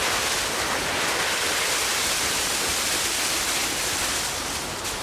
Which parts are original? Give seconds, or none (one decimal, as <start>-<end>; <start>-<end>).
0.0-1.9; 2.7-3.6